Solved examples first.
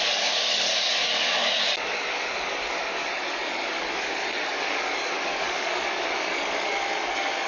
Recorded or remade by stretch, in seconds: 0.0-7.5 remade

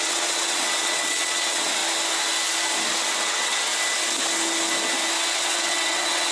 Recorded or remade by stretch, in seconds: 0.0-1.8 remade; 1.8-3.3 recorded; 3.3-3.7 remade; 3.7-5.2 recorded; 5.2-6.3 remade

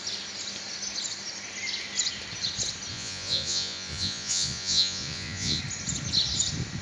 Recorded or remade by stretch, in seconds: 0.0-2.9 recorded; 2.9-5.6 remade; 5.6-6.8 recorded

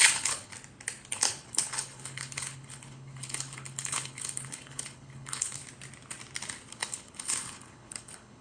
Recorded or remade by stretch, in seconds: 0.0-0.5 remade; 0.5-1.1 recorded; 1.1-5.6 remade; 5.6-6.7 recorded; 6.7-8.4 remade